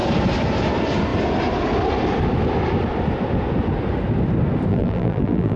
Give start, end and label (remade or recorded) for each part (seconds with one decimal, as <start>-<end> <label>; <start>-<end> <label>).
0.0-4.7 recorded; 4.7-5.6 remade